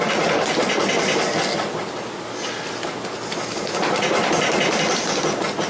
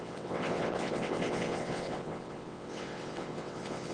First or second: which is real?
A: first